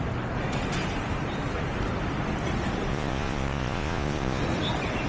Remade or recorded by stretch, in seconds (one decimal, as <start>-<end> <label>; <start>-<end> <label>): 0.0-2.9 recorded; 2.9-4.4 remade; 4.4-5.1 recorded